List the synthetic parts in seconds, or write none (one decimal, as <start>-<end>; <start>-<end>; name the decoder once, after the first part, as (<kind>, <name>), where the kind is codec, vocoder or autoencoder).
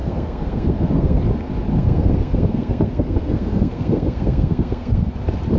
0.0-1.2 (codec, SNAC); 1.7-5.1